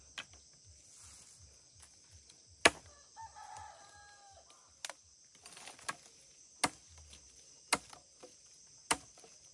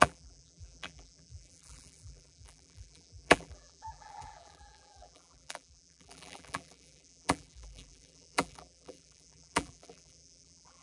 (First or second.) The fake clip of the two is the second